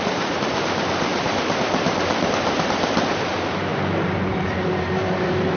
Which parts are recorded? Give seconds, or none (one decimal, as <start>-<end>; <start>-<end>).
none